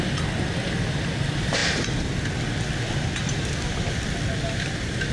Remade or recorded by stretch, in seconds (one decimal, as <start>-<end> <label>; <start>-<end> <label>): 0.0-5.1 recorded